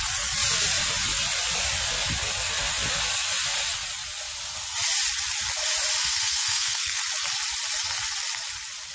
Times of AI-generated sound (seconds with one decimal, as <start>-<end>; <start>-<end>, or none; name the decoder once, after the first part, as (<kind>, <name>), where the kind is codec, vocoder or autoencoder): 6.0-7.0 (codec, SNAC)